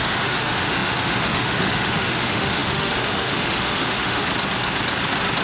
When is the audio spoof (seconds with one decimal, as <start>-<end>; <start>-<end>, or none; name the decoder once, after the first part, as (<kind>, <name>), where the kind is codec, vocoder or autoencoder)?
0.0-4.2 (autoencoder, DAC-VAE)